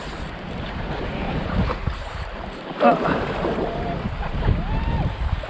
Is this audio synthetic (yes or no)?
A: yes